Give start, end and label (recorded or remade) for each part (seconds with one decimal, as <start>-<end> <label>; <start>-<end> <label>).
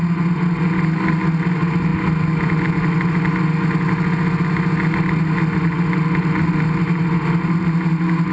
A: 0.0-8.3 recorded